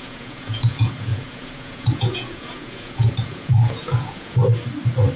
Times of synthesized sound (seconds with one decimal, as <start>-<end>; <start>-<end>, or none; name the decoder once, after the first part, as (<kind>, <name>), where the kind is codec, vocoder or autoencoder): 0.0-4.4 (vocoder, Vocos)